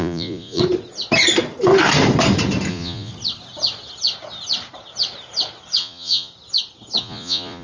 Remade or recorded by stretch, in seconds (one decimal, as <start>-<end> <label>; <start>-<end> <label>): 0.0-0.6 remade; 0.6-2.7 recorded; 2.7-3.1 remade; 3.1-5.8 recorded; 5.8-6.3 remade; 6.3-7.0 recorded; 7.0-7.6 remade